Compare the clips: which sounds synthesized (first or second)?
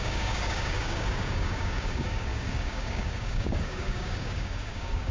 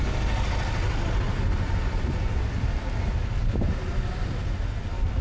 first